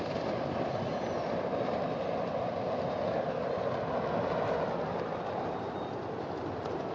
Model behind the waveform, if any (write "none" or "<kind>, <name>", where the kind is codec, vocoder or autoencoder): none